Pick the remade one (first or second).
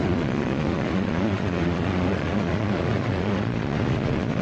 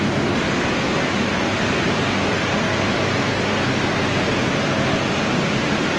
first